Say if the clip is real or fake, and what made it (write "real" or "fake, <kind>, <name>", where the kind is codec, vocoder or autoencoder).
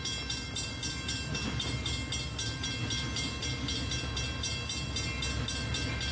real